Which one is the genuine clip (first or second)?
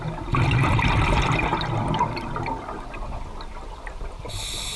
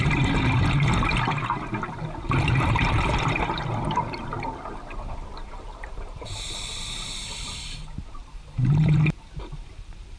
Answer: first